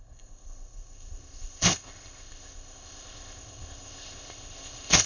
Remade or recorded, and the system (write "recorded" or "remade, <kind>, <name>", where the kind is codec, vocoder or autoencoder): remade, codec, ZipCodec